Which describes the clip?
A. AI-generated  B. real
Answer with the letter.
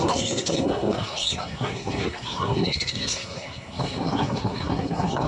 A